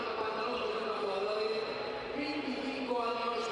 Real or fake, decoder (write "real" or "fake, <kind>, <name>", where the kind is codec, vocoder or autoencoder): real